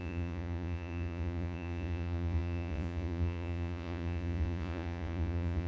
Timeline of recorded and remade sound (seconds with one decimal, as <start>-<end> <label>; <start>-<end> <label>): 0.0-5.7 remade